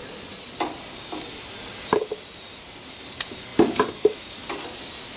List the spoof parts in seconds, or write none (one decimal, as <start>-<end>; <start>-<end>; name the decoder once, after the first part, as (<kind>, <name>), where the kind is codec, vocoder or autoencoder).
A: 0.0-3.1 (vocoder, BigVGAN v2)